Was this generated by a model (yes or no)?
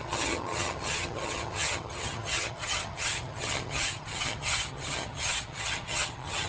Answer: yes